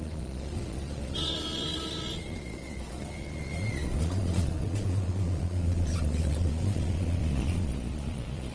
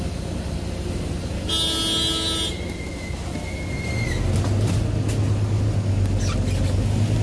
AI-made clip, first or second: first